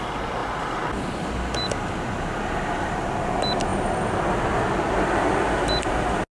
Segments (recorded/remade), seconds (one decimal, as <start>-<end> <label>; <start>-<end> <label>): 0.0-6.4 recorded